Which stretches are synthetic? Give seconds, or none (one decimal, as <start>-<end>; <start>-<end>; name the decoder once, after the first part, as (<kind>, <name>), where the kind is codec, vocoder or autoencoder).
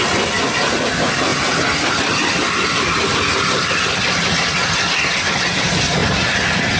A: none